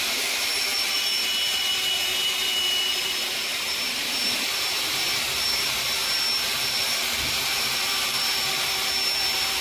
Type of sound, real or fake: fake